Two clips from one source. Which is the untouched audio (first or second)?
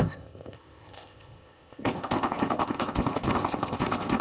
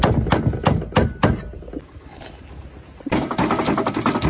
second